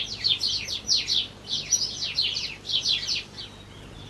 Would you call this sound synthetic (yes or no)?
no